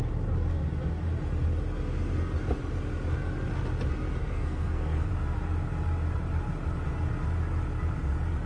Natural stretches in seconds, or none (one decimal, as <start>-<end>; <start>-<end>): 0.0-4.2; 5.1-8.5